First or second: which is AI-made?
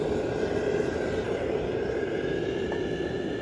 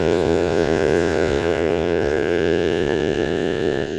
second